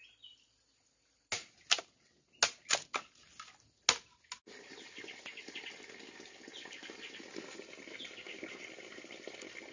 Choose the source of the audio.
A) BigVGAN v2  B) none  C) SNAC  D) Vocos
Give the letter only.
B